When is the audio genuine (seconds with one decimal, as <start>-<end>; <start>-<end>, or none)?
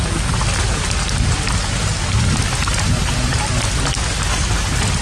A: 0.0-5.0